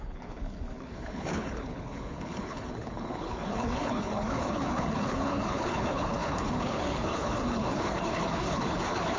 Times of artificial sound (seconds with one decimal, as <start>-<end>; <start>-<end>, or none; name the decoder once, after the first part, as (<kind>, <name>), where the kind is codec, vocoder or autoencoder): 0.0-9.2 (codec, HILCodec)